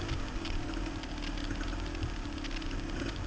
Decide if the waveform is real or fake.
real